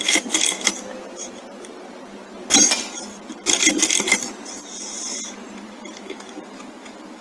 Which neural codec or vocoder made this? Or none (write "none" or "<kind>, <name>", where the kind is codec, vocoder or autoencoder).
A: none